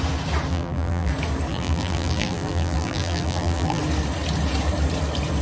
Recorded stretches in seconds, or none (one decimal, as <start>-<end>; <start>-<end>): 0.0-0.5; 1.1-1.5; 3.8-5.4